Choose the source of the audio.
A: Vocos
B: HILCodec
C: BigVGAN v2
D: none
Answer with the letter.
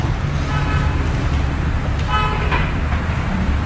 D